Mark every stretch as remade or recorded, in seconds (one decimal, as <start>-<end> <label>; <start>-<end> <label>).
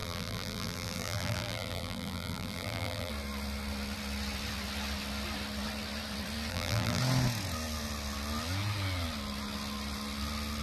0.0-3.1 remade; 3.1-6.5 recorded; 6.5-7.0 remade; 7.0-10.6 recorded